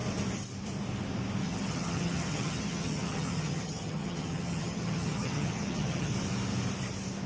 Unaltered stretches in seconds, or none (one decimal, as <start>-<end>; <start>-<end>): 0.0-1.4; 6.1-7.3